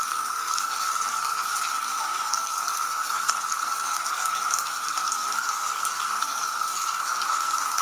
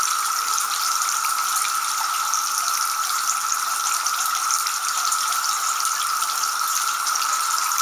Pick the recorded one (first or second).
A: second